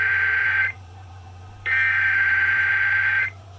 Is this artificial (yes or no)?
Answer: yes